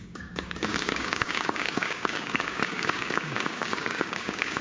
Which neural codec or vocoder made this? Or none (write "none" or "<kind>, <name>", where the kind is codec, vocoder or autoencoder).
codec, DAC